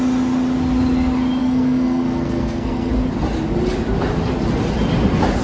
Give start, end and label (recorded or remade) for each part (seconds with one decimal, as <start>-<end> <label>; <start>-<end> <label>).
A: 0.0-1.4 recorded; 1.4-2.9 remade; 2.9-5.4 recorded

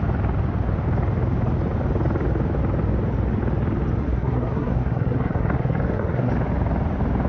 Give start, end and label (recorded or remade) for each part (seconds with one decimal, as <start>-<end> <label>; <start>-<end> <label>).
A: 0.0-3.9 recorded; 3.9-6.3 remade; 6.3-7.3 recorded